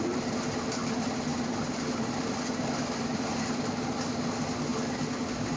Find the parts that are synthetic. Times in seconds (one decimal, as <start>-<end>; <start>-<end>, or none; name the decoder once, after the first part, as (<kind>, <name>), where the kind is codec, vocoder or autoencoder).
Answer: 1.3-3.3 (vocoder, BigVGAN v2)